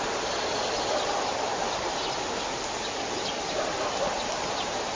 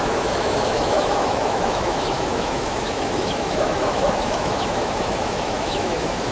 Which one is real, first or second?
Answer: first